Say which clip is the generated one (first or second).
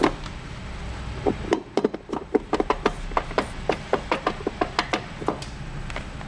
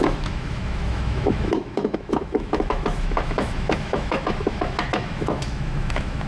second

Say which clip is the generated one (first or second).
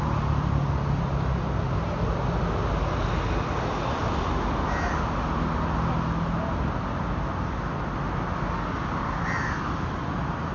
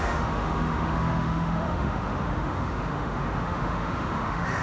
second